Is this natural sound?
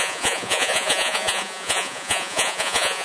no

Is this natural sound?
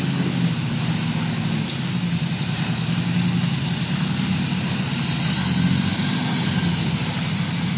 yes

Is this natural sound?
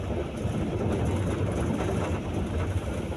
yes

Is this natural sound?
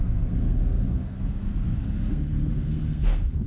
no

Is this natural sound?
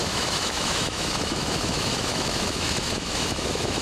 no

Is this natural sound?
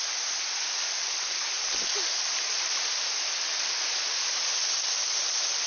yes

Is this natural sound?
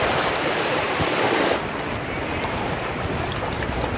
yes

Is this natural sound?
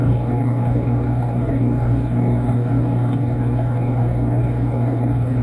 no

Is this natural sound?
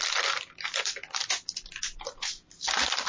yes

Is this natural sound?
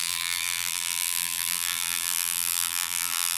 no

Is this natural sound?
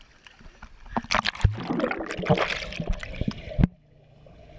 yes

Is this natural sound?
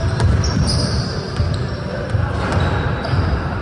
no